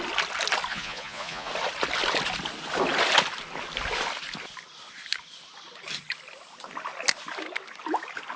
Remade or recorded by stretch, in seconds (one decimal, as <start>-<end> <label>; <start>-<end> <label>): 0.0-0.7 recorded; 0.7-1.5 remade; 1.5-8.4 recorded